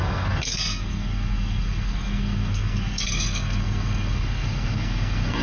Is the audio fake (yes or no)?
yes